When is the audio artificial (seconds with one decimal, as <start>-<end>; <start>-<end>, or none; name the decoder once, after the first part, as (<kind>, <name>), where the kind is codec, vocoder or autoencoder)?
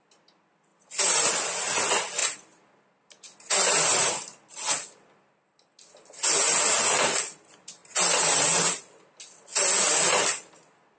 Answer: 0.7-1.3 (vocoder, BigVGAN v2)